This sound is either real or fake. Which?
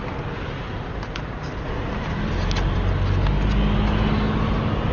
real